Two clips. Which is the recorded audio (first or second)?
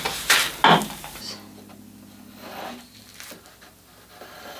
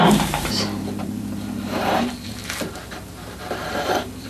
first